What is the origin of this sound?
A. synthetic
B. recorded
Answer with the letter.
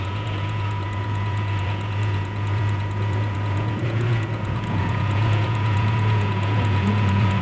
A